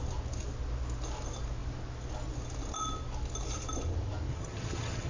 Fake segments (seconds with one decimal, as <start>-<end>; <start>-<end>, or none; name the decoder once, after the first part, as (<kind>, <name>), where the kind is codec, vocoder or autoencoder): 4.3-5.1 (vocoder, HiFi-GAN)